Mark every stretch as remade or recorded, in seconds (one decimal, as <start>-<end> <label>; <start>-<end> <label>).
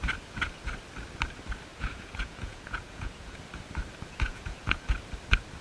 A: 0.0-1.7 recorded; 1.7-3.4 remade; 3.4-4.1 recorded; 4.1-4.8 remade; 4.8-5.6 recorded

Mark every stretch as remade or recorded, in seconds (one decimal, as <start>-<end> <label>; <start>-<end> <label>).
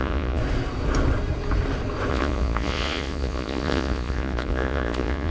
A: 0.0-0.4 remade; 0.4-2.1 recorded; 2.1-5.3 remade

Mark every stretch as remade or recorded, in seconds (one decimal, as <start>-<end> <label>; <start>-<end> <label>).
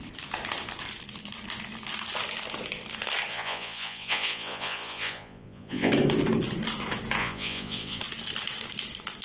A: 0.0-3.3 recorded; 3.3-5.9 remade; 5.9-7.2 recorded; 7.2-8.0 remade; 8.0-9.2 recorded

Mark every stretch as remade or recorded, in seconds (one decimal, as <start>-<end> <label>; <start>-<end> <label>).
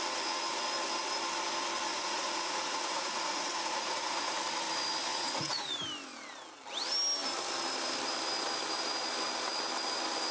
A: 0.0-1.9 recorded; 1.9-4.3 remade; 4.3-5.1 recorded; 5.1-5.7 remade; 5.7-10.3 recorded